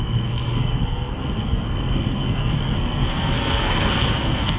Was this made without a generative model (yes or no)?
no